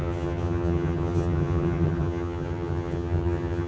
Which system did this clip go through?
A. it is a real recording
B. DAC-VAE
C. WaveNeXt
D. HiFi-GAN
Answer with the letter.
D